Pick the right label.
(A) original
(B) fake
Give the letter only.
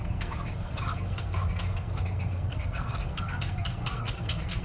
B